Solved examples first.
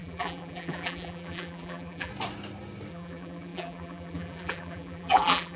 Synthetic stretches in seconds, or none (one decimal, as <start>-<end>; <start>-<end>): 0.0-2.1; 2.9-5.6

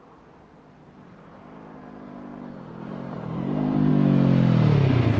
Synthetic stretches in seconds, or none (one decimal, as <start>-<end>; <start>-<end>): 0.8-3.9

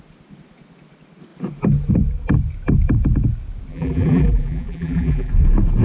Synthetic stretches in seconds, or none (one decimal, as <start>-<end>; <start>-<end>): 3.7-5.3

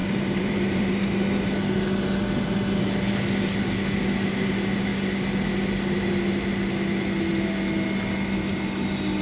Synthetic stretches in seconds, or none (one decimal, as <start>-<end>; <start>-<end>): 0.0-0.9

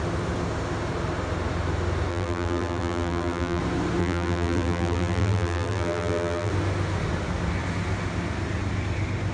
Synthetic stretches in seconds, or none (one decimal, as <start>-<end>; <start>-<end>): 2.1-3.6; 4.0-6.5

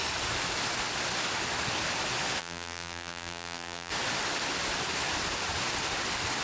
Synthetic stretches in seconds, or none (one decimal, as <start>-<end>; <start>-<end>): 2.4-3.9

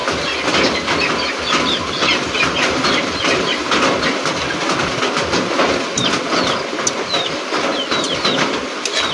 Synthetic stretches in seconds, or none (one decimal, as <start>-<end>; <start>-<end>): 2.0-3.7

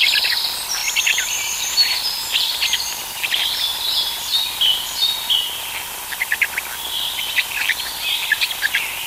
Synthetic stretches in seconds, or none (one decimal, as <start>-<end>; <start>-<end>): 0.8-3.0; 3.7-4.4